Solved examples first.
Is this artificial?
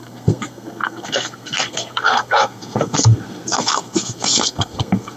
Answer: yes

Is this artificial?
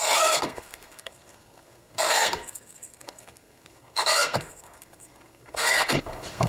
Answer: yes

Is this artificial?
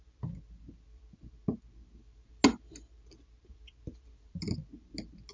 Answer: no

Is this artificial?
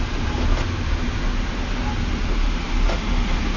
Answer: no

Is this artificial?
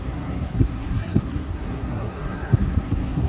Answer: yes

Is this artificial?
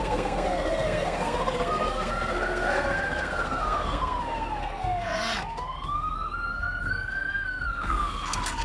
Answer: yes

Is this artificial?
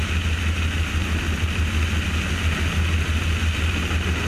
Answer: no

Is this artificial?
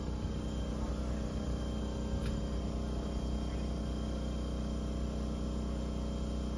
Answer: no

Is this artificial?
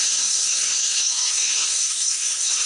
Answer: yes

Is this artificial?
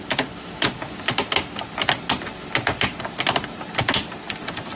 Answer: no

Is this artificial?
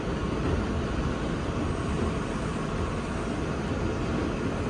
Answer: no